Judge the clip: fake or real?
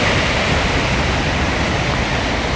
real